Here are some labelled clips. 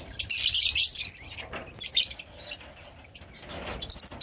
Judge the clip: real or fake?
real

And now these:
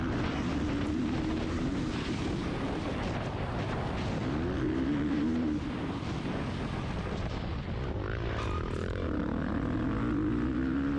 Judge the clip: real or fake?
real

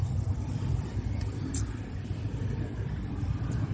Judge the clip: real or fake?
fake